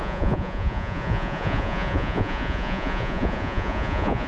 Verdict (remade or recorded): remade